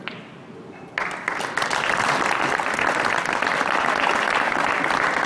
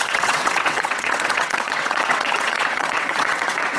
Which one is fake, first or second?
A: second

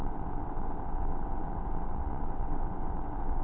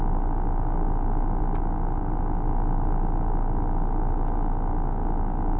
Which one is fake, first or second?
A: first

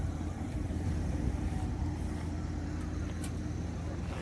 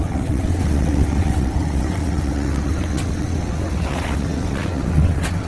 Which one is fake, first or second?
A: second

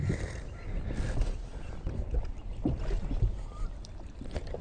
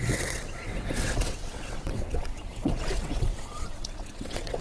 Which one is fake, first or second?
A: second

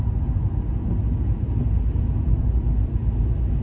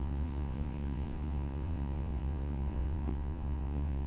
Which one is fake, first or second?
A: second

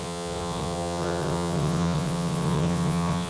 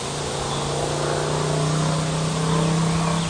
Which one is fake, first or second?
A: first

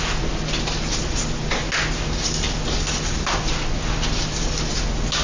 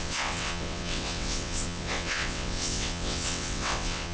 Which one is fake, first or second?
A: second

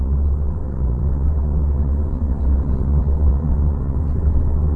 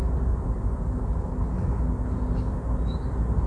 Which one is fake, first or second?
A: first